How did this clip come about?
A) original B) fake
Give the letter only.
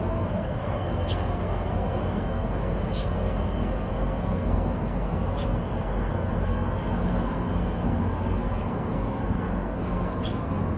B